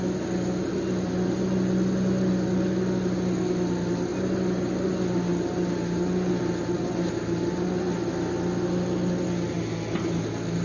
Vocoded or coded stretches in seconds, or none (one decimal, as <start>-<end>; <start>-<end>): none